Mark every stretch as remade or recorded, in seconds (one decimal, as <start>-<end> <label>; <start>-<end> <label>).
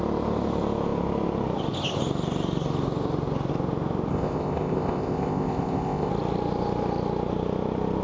0.0-4.1 recorded; 4.1-6.1 remade; 6.1-8.0 recorded